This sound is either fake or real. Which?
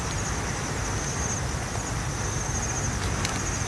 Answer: real